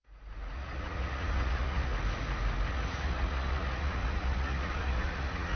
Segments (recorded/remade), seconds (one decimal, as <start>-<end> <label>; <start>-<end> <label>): 0.0-1.9 remade; 1.9-2.7 recorded; 2.7-5.6 remade